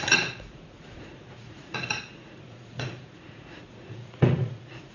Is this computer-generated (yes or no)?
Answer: yes